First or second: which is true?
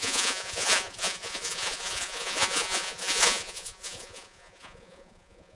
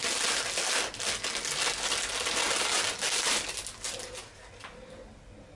second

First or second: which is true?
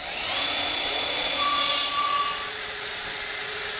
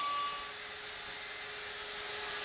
second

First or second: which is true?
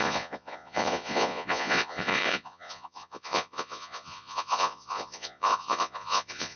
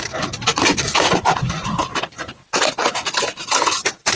second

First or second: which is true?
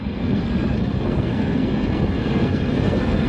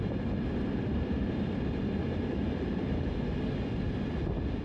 second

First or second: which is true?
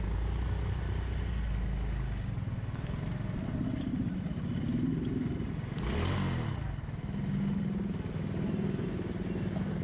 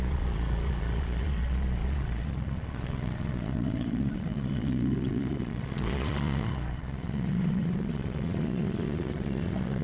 first